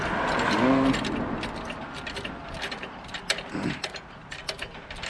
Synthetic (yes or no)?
no